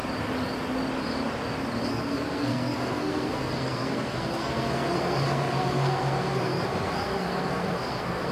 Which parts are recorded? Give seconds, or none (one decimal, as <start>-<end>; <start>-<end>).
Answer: 0.0-1.8